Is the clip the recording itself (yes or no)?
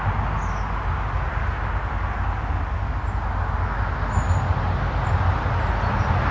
yes